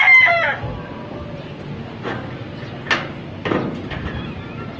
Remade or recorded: recorded